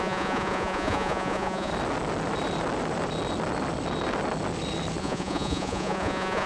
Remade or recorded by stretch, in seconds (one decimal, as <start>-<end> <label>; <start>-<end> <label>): 0.0-1.7 remade; 1.7-5.0 recorded; 5.0-6.5 remade